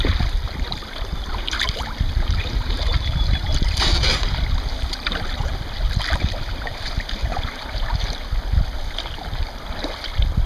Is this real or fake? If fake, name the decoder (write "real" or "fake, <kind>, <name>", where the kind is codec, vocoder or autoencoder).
real